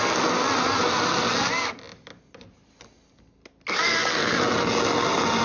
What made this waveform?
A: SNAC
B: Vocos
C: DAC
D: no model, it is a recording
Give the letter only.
D